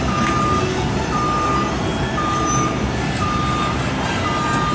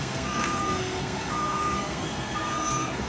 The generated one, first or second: second